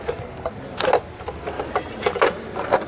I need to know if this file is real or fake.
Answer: real